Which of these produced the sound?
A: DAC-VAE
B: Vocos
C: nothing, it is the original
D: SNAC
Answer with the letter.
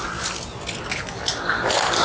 C